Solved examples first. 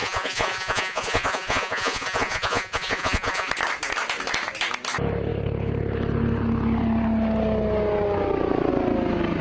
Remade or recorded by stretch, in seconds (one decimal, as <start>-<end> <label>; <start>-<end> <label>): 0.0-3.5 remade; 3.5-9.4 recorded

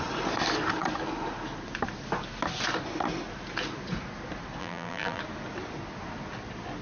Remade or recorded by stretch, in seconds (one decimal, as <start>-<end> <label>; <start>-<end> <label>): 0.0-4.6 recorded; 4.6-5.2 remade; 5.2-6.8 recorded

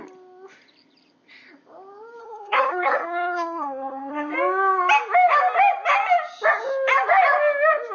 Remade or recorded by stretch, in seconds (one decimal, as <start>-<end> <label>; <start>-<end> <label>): 0.0-2.2 recorded; 2.2-4.3 remade; 4.3-7.9 recorded